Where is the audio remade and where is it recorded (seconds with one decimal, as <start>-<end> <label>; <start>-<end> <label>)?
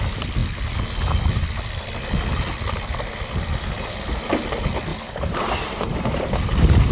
0.0-4.9 recorded; 4.9-6.9 remade